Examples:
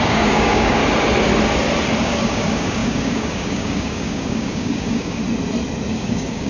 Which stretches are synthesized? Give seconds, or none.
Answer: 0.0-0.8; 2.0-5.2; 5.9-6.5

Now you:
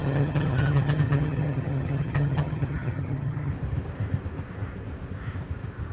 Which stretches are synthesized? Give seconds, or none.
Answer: 0.0-3.5

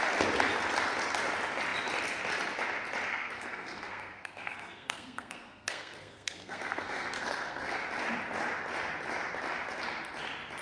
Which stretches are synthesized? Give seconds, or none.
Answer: 3.1-7.8

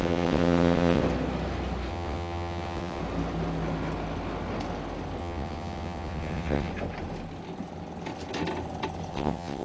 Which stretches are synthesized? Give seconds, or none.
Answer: 0.0-1.0; 1.9-3.0; 5.2-6.7; 9.1-9.6

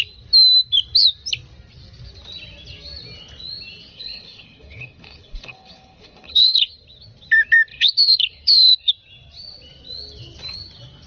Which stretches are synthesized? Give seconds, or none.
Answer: 3.9-6.7; 7.7-8.9

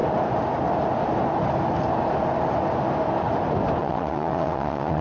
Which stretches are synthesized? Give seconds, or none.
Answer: 3.8-5.0